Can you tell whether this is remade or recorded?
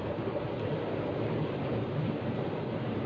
remade